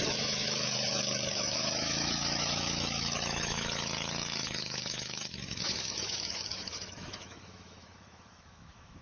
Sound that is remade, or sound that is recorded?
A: remade